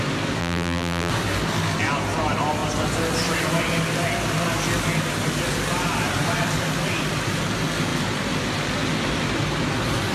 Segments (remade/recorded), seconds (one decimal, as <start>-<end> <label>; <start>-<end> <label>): 0.0-0.4 recorded; 0.4-1.1 remade; 1.1-10.1 recorded